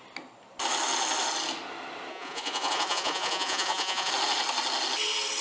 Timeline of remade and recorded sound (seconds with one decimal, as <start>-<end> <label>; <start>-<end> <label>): 0.0-2.1 recorded; 2.1-4.1 remade; 4.1-5.4 recorded